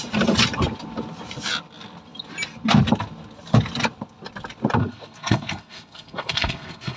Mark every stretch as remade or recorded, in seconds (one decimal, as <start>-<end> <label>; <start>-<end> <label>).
0.0-4.8 recorded; 4.8-7.0 remade